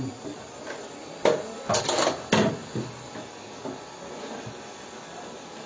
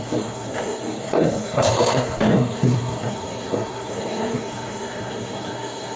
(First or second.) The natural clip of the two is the first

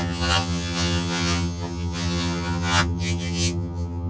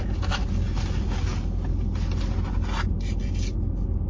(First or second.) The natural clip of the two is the second